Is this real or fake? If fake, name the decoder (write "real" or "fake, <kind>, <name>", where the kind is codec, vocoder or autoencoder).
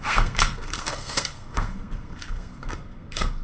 fake, codec, SNAC